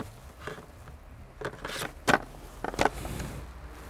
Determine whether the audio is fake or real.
real